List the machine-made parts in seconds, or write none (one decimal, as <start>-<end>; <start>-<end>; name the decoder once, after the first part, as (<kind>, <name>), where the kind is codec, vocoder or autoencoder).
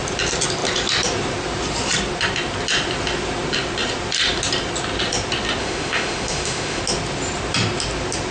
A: 5.6-6.8 (autoencoder, DAC-VAE)